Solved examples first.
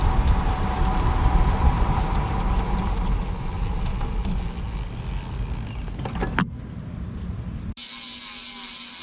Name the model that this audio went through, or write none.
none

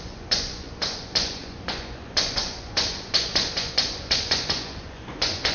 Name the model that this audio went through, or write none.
vocoder, Vocos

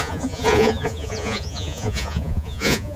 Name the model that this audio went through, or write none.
vocoder, Vocos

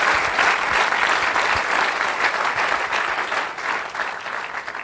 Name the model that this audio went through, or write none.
none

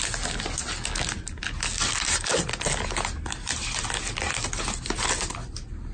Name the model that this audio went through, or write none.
none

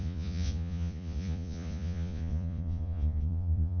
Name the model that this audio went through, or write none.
vocoder, Vocos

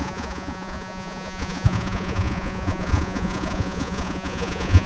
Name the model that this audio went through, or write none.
vocoder, Vocos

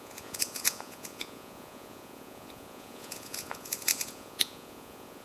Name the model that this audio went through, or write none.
vocoder, Vocos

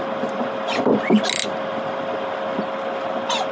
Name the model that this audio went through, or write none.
none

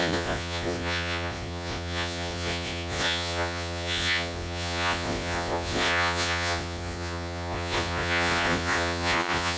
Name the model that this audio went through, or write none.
vocoder, Vocos